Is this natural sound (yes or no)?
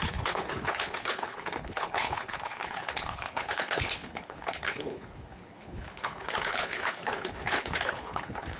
no